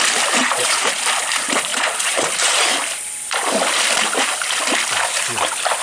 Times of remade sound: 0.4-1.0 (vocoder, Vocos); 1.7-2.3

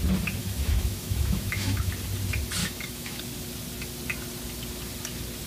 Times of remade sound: 0.4-1.9 (autoencoder, DAC-VAE); 2.6-3.2